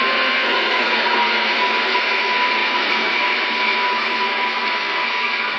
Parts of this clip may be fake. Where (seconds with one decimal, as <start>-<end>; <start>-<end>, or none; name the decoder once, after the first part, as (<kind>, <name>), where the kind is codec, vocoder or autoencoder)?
0.0-5.6 (codec, SNAC)